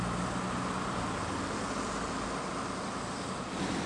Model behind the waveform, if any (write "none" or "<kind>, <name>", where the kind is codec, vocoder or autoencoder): none